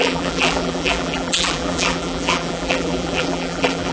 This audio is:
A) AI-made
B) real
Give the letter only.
A